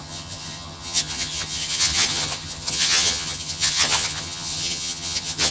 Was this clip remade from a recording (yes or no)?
yes